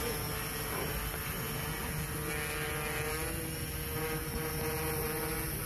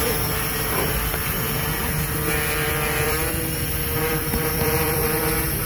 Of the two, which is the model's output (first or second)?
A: second